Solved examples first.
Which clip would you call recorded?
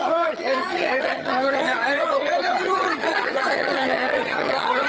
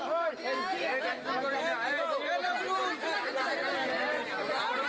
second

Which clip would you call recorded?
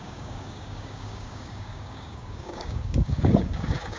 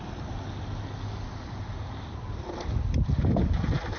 second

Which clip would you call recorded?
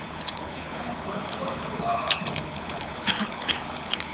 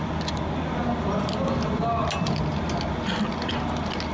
second